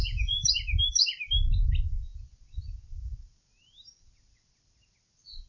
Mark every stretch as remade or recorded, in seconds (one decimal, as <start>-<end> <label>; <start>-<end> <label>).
0.0-0.5 remade; 0.5-5.5 recorded

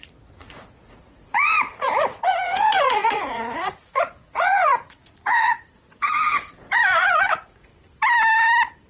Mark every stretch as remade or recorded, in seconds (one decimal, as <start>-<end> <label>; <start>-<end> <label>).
0.0-7.7 remade; 7.7-8.9 recorded

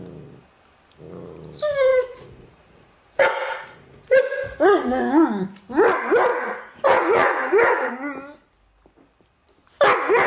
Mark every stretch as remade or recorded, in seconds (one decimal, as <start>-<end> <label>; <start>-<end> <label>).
0.0-1.9 recorded; 1.9-5.0 remade; 5.0-6.3 recorded; 6.3-7.9 remade; 7.9-10.3 recorded

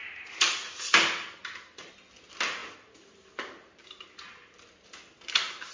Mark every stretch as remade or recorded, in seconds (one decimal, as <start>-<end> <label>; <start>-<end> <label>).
0.0-0.9 remade; 0.9-5.7 recorded

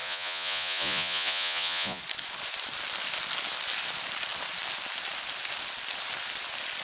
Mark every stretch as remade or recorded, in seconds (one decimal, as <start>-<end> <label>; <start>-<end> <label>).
0.0-2.0 remade; 2.0-6.8 recorded

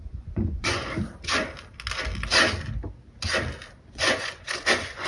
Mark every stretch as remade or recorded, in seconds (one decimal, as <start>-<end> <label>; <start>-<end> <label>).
0.0-0.8 remade; 0.8-3.9 recorded; 3.9-5.1 remade